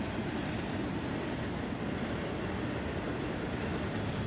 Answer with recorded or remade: recorded